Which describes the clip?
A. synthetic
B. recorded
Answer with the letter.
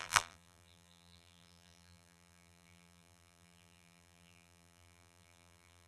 A